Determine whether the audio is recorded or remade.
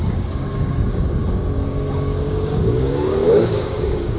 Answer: remade